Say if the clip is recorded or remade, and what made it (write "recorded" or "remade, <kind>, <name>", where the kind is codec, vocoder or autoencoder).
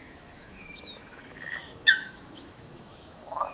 remade, autoencoder, DAC-VAE